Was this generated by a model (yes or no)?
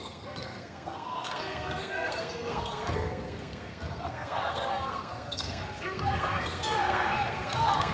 yes